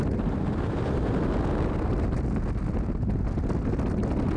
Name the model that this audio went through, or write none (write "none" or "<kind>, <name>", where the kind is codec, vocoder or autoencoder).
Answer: none